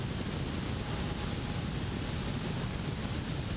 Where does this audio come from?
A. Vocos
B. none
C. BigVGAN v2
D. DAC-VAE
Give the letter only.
B